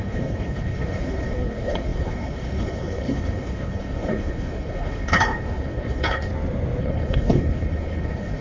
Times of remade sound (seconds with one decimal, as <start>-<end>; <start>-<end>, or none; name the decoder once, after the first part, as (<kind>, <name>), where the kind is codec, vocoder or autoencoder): 0.0-6.3 (codec, HILCodec); 6.8-8.4